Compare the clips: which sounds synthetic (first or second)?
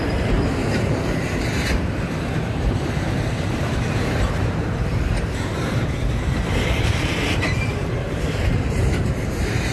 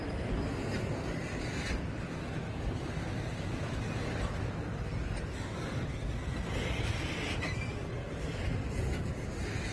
first